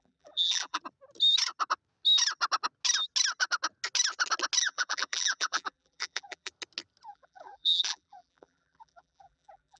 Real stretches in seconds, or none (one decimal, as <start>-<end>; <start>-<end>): 0.8-4.6; 6.5-7.1